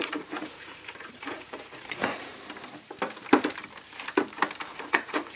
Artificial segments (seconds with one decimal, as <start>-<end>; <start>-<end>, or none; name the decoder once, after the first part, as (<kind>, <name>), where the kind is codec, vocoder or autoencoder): 0.0-2.3 (vocoder, Vocos); 4.7-5.4